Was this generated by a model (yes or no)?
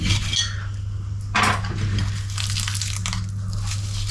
no